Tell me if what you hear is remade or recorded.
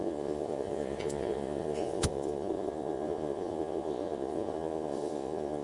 remade